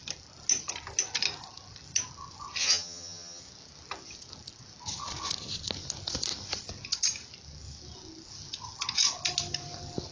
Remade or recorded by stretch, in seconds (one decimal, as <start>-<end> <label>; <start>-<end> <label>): 0.0-2.6 recorded; 2.6-3.4 remade; 3.4-10.1 recorded